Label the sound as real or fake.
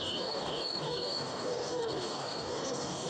fake